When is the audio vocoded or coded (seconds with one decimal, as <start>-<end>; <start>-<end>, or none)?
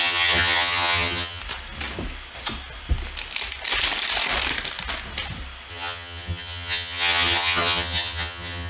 0.0-1.4; 5.7-8.7